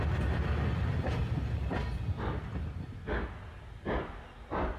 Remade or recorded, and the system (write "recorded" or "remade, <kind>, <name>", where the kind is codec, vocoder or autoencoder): recorded